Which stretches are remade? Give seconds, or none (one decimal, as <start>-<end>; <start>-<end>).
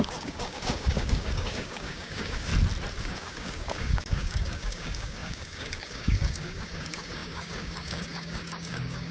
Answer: 0.0-2.5; 3.0-9.1